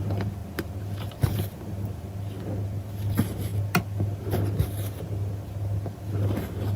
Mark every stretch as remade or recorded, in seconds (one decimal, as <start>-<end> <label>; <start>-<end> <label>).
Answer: 0.0-6.8 recorded